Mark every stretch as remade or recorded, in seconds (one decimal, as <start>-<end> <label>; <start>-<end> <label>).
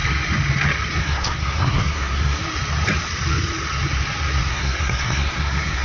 0.0-1.0 recorded; 1.0-2.4 remade; 2.4-4.5 recorded; 4.5-5.8 remade